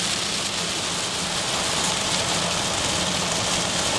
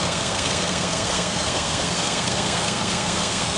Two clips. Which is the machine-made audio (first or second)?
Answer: second